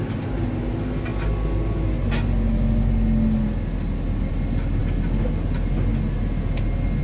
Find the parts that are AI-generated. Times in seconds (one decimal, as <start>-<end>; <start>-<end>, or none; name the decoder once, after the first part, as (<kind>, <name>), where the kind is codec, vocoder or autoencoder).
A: none